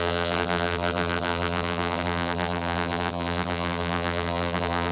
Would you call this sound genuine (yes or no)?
no